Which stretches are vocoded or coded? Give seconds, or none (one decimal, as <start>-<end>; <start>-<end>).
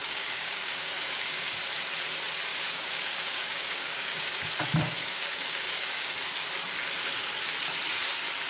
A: 0.0-1.6; 2.5-4.5; 5.0-6.1